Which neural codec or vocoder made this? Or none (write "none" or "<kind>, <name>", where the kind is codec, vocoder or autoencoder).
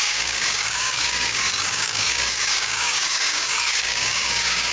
codec, DAC